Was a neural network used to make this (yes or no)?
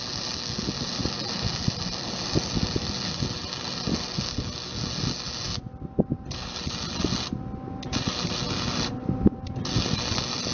no